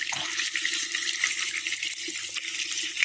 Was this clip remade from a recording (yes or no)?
no